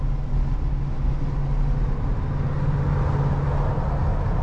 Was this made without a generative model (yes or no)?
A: yes